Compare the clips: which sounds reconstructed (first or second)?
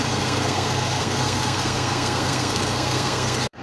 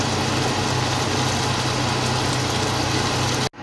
first